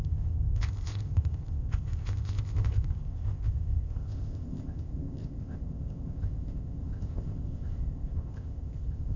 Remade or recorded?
remade